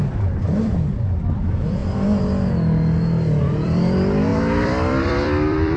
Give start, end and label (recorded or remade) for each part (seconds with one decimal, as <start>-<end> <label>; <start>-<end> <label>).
0.0-1.8 remade; 1.8-3.4 recorded; 3.4-5.8 remade